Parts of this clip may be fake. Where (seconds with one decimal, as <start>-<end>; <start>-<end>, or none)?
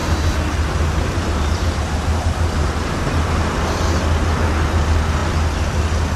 0.0-3.7